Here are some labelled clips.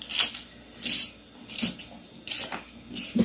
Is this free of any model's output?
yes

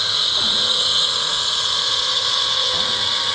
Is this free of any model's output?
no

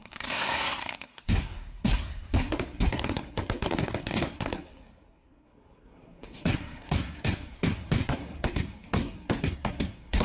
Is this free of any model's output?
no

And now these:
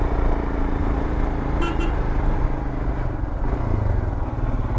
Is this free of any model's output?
yes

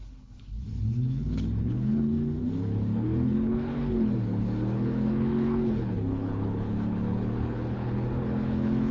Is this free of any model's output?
no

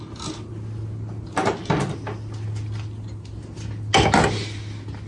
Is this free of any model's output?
yes